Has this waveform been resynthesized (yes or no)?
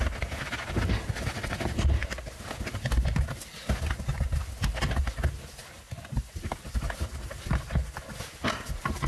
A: no